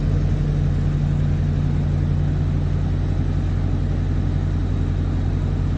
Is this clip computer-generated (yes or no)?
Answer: no